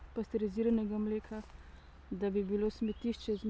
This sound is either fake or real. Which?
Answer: real